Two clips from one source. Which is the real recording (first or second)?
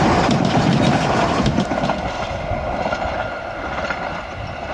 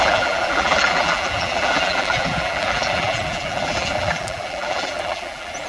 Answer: first